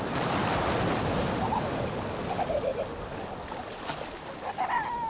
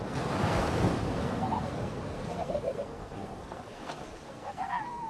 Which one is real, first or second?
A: first